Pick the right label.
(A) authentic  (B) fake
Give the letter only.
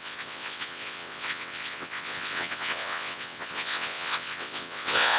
B